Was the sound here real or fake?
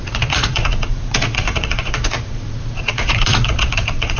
fake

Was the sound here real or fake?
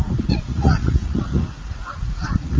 fake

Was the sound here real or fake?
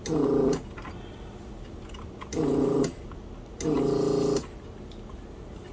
real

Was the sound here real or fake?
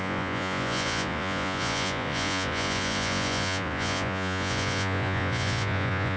fake